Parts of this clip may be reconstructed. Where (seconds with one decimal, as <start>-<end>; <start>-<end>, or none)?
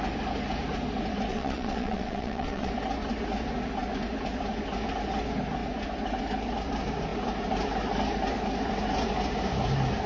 1.3-2.7